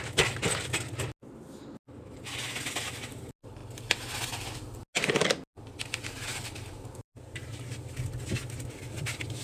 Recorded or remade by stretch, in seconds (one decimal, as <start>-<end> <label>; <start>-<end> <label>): 0.0-6.3 recorded; 6.3-7.7 remade; 7.7-9.4 recorded